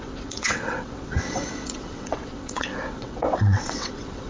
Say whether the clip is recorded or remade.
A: remade